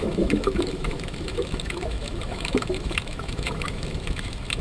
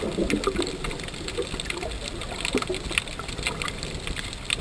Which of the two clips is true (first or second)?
second